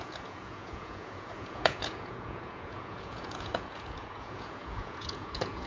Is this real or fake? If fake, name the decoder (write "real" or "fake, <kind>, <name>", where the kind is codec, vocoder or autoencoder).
fake, vocoder, Vocos